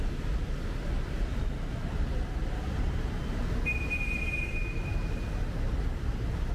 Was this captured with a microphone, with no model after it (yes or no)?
yes